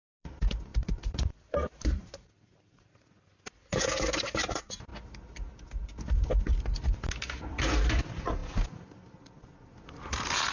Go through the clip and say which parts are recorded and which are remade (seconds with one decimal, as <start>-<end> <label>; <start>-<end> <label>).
0.0-0.7 recorded; 0.7-3.1 remade; 3.1-10.5 recorded